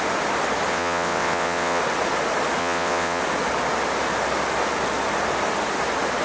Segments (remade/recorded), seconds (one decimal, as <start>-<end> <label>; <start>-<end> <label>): 0.0-0.7 recorded; 0.7-1.8 remade; 1.8-2.6 recorded; 2.6-3.2 remade; 3.2-6.2 recorded